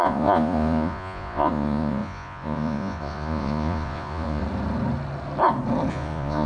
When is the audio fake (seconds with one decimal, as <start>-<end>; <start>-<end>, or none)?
0.0-4.4; 5.9-6.5